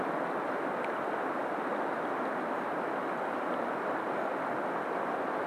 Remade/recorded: recorded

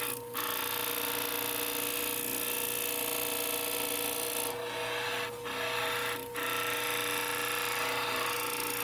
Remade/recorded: recorded